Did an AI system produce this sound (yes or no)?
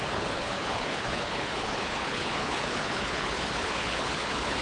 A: yes